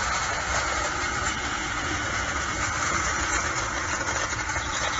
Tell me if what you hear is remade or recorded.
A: remade